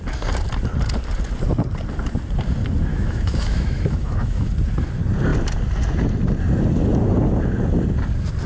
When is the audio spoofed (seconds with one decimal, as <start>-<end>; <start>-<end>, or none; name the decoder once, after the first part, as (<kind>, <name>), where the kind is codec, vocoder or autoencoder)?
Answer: 2.9-4.5 (autoencoder, DAC-VAE)